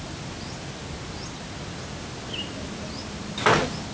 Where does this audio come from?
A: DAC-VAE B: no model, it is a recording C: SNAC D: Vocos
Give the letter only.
B